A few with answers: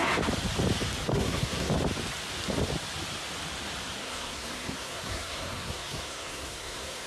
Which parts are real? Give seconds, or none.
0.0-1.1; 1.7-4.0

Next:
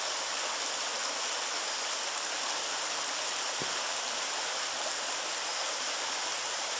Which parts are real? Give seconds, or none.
0.0-6.8

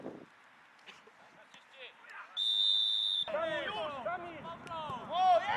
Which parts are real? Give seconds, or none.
0.0-5.6

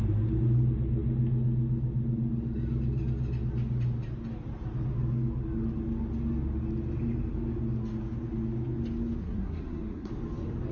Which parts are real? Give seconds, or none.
0.0-9.2; 10.1-10.7